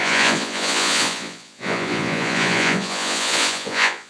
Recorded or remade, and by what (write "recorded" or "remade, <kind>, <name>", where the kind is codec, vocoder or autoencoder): remade, vocoder, Vocos